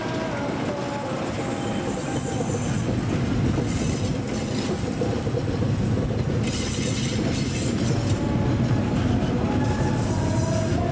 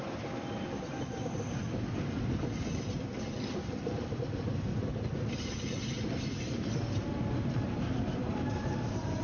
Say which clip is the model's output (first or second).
second